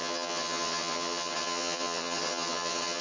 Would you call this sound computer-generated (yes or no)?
yes